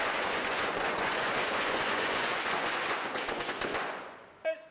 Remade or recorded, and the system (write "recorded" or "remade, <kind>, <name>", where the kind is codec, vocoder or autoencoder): remade, vocoder, Vocos